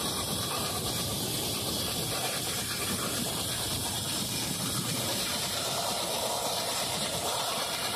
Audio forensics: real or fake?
fake